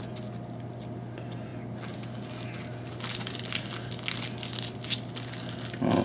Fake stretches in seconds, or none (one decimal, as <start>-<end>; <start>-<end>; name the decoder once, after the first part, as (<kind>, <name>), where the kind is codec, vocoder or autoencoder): none